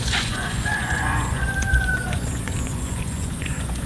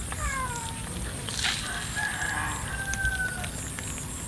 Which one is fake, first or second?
first